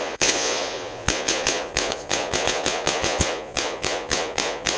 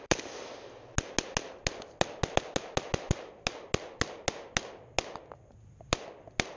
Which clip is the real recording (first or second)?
second